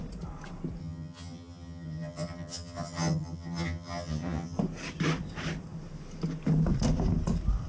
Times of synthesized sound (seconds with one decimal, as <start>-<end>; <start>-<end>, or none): 0.8-4.6